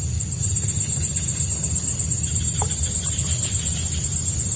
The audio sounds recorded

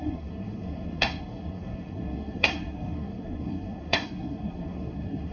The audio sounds remade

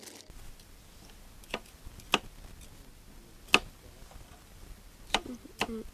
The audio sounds recorded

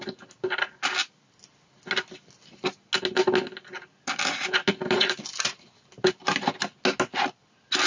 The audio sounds recorded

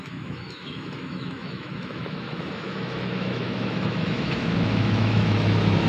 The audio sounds remade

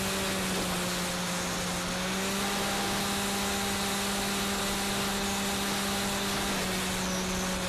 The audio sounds recorded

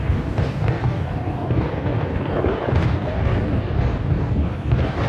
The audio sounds remade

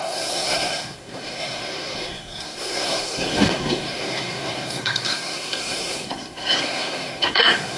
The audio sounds remade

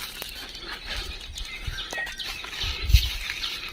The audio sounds recorded